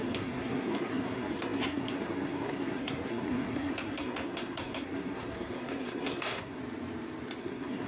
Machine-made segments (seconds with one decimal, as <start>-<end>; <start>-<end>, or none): 0.0-6.6; 7.4-7.9